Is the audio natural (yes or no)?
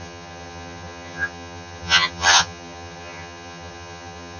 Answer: no